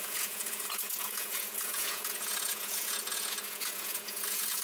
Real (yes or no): no